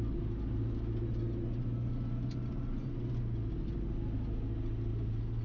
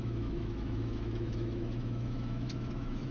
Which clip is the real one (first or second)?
first